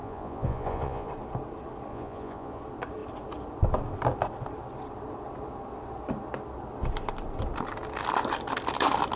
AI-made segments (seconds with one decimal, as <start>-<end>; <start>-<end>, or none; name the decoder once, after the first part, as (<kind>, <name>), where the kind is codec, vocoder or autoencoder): 0.0-1.1 (vocoder, Vocos); 1.9-2.6